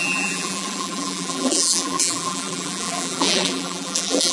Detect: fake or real fake